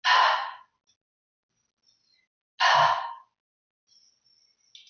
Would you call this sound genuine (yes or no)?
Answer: yes